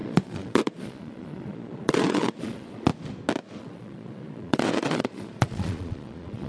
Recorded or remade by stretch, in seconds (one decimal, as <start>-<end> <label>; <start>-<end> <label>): 0.0-2.9 remade; 2.9-3.6 recorded; 3.6-6.5 remade